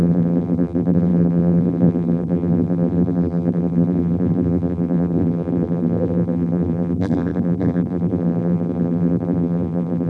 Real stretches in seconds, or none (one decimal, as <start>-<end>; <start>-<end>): none

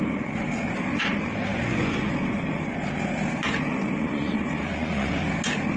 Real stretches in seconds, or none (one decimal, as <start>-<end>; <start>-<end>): 0.0-1.5; 2.1-4.0; 5.1-5.8

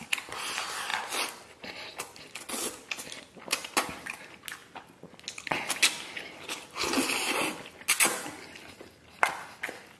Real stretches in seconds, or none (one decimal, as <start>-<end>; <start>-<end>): 0.0-10.0

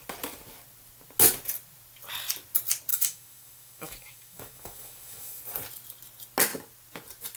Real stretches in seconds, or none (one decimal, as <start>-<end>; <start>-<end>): 0.0-2.9; 5.4-7.4

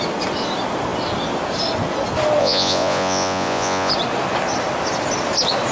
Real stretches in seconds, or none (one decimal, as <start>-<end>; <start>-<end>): 0.0-2.4; 3.9-5.7

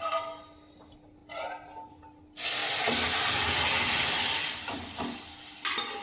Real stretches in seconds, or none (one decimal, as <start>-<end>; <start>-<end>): 0.0-6.0

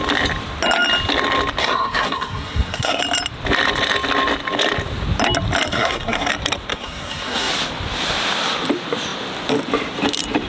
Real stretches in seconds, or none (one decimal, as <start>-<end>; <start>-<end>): 0.0-1.6; 3.0-5.7; 6.3-6.7; 7.5-10.5

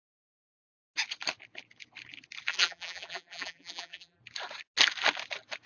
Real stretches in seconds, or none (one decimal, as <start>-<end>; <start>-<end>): 0.0-2.5; 4.2-5.7